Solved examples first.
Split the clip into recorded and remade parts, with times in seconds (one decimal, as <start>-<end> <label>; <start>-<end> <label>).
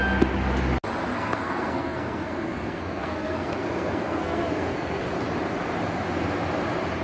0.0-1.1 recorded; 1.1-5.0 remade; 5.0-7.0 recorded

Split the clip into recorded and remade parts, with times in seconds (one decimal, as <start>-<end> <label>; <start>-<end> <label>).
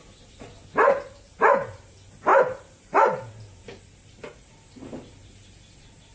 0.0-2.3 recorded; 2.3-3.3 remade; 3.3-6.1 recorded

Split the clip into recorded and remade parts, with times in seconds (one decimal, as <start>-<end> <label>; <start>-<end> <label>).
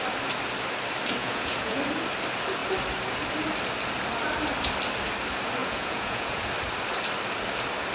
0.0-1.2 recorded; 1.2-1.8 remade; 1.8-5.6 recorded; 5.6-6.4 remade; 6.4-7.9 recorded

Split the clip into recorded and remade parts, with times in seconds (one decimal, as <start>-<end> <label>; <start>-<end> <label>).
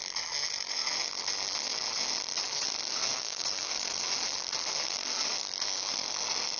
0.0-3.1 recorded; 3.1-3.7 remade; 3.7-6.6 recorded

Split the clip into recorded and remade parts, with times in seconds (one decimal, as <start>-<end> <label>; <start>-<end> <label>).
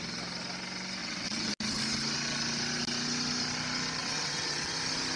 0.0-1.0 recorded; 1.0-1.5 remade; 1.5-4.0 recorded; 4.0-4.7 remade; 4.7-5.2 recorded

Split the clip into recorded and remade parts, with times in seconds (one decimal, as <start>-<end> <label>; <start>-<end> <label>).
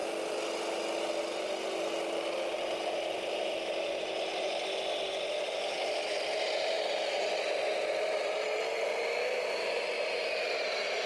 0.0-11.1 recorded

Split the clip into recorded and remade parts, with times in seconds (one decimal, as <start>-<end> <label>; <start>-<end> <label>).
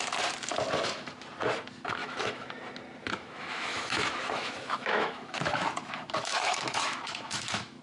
0.0-2.0 recorded; 2.0-2.5 remade; 2.5-3.0 recorded; 3.0-7.8 remade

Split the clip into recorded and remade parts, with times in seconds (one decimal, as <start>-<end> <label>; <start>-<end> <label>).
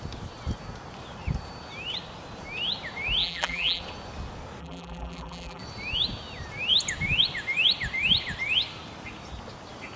0.0-3.2 recorded; 3.2-3.8 remade; 3.8-4.6 recorded; 4.6-5.6 remade; 5.6-10.0 recorded